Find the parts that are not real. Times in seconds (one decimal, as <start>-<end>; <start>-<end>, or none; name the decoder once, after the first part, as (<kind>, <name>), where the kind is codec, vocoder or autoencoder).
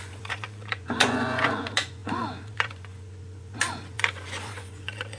0.0-5.2 (vocoder, Vocos)